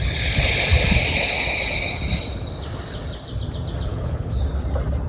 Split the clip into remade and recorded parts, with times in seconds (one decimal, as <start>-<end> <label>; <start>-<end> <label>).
0.0-3.9 recorded; 3.9-4.4 remade; 4.4-5.1 recorded